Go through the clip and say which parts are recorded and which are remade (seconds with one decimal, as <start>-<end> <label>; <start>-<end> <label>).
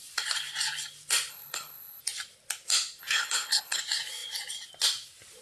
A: 0.0-1.3 recorded; 1.3-2.0 remade; 2.0-3.0 recorded; 3.0-3.8 remade; 3.8-5.4 recorded